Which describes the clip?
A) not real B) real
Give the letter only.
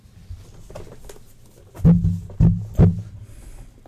B